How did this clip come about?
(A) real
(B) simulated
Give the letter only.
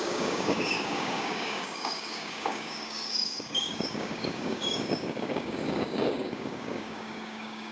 B